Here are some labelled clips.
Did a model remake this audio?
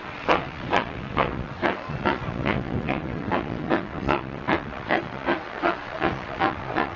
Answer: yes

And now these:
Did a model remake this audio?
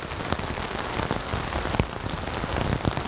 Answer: no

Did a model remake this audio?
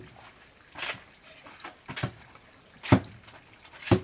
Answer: no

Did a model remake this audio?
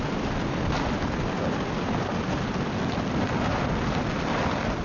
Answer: no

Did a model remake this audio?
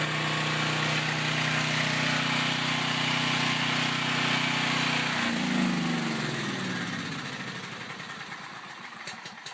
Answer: no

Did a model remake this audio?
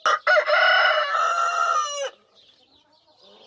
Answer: no